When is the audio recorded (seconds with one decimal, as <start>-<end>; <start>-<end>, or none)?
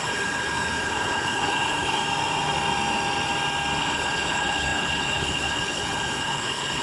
2.0-3.8